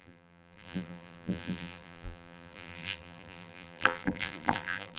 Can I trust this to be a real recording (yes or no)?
no